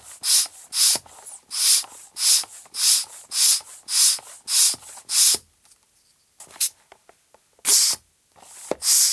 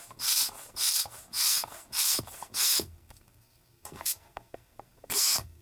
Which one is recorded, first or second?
first